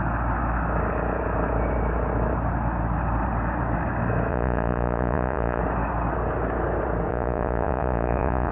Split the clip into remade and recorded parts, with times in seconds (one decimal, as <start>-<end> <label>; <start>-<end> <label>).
0.0-4.3 recorded; 4.3-5.6 remade; 5.6-7.1 recorded; 7.1-8.5 remade